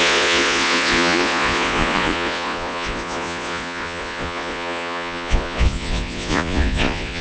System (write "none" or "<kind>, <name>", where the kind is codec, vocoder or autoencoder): vocoder, Vocos